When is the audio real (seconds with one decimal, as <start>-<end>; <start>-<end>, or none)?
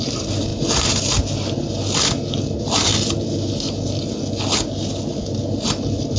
0.0-6.2